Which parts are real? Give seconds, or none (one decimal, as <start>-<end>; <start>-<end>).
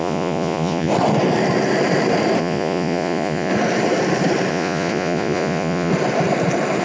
0.9-2.4; 3.5-4.5; 5.9-6.8